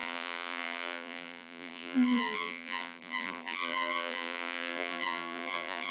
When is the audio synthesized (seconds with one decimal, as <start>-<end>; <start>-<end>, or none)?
0.0-5.9